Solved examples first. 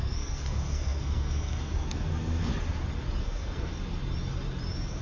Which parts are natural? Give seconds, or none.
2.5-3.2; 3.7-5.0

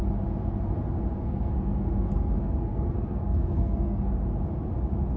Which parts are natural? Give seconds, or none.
0.0-1.2; 4.1-5.2

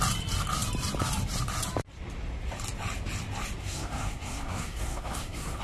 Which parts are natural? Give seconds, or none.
0.0-3.6

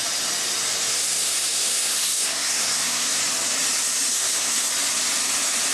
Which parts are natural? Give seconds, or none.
0.0-0.9; 3.2-4.1; 4.7-5.7

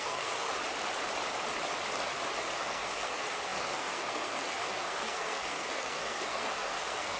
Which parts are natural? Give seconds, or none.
0.5-2.6

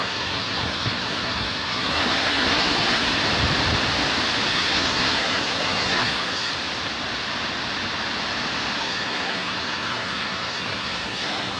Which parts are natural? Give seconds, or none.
3.2-4.5; 6.5-8.8

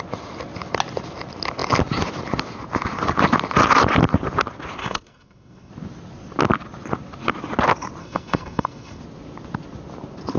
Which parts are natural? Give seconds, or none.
0.0-4.8; 5.7-8.0; 9.0-10.4

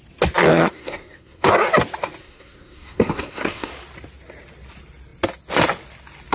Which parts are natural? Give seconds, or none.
0.0-0.5; 1.5-2.2; 3.7-6.3